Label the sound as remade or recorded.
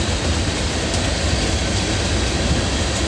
recorded